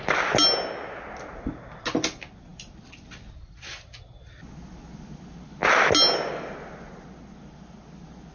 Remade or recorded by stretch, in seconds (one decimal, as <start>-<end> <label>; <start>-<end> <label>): 0.0-8.3 recorded